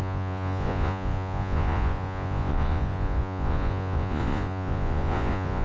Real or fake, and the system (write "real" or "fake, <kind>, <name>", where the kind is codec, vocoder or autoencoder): fake, vocoder, Vocos